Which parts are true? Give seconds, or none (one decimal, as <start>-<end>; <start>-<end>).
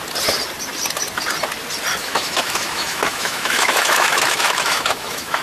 0.0-2.0